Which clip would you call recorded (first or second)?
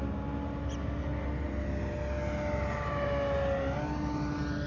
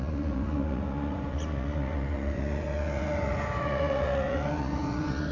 first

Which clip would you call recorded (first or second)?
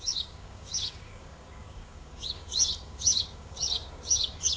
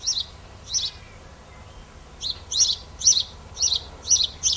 second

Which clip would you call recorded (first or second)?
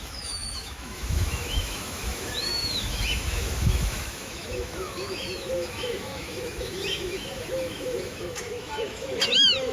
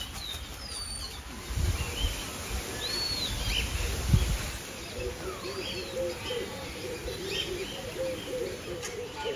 second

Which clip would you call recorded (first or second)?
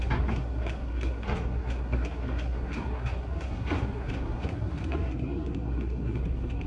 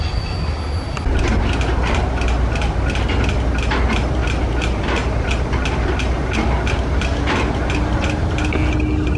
second